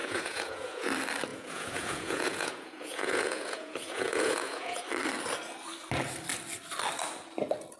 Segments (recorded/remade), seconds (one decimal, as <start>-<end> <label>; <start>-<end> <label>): 0.0-0.9 remade; 0.9-1.3 recorded; 1.3-4.8 remade; 4.8-7.8 recorded